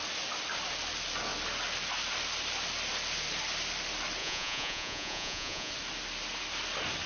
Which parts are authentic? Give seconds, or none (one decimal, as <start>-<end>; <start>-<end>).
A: 0.0-4.2; 5.7-7.1